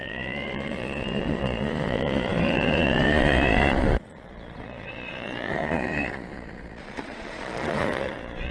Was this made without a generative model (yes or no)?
no